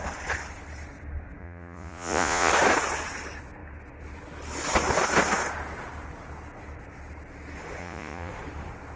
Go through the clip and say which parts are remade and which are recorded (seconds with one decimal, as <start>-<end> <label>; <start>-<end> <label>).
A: 0.0-1.4 recorded; 1.4-2.5 remade; 2.5-7.8 recorded; 7.8-8.3 remade; 8.3-9.0 recorded

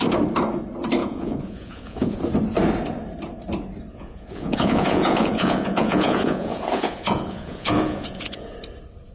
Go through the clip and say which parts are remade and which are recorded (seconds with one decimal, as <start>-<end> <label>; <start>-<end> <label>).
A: 0.0-1.0 recorded; 1.0-2.2 remade; 2.2-3.9 recorded; 3.9-8.6 remade; 8.6-9.1 recorded

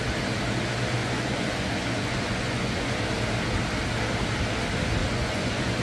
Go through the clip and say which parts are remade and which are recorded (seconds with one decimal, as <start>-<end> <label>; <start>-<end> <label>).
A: 0.0-1.0 recorded; 1.0-2.9 remade; 2.9-5.0 recorded; 5.0-5.8 remade

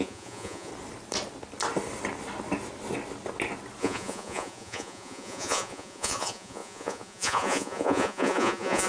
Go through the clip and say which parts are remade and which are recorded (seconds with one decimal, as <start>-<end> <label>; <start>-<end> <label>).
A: 0.0-0.7 remade; 0.7-3.8 recorded; 3.8-8.9 remade

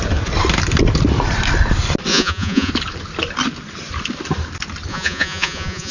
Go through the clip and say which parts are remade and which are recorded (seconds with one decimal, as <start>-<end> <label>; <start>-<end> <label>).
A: 0.0-2.1 recorded; 2.1-2.7 remade; 2.7-4.9 recorded; 4.9-5.9 remade